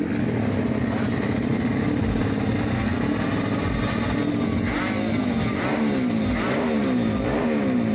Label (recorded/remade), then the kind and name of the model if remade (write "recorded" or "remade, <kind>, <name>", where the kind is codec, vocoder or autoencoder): recorded